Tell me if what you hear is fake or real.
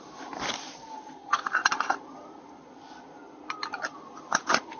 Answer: real